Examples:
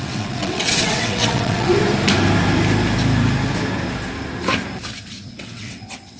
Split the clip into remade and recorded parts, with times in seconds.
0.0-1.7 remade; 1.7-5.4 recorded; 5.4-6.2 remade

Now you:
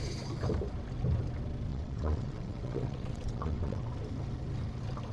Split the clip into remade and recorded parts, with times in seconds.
0.0-1.7 recorded; 1.7-3.9 remade; 3.9-5.1 recorded

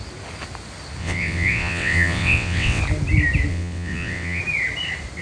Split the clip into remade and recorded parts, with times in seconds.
0.0-1.0 recorded; 1.0-2.8 remade; 2.8-3.5 recorded; 3.5-4.4 remade; 4.4-5.2 recorded

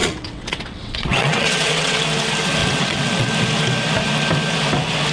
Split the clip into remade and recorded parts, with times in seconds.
0.0-2.0 remade; 2.0-2.6 recorded; 2.6-3.3 remade; 3.3-5.1 recorded

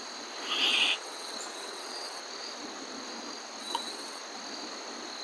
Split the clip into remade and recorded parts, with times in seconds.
0.0-0.7 recorded; 0.7-2.2 remade; 2.2-3.6 recorded; 3.6-4.2 remade; 4.2-5.2 recorded